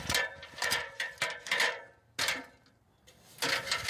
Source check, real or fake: real